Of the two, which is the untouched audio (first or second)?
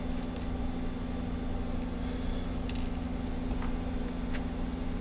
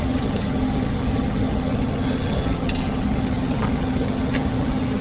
first